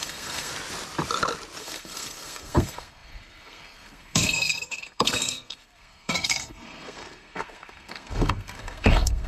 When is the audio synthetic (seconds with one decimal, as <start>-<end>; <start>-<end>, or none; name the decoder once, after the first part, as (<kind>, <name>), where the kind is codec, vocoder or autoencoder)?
0.0-0.5 (codec, SNAC); 1.6-9.3